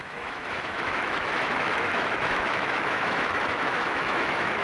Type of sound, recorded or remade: remade